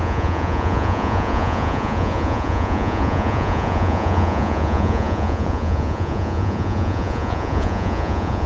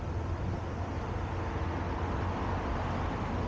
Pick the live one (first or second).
second